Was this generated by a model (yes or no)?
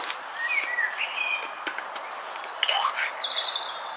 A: no